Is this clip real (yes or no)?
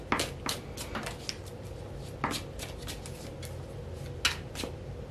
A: yes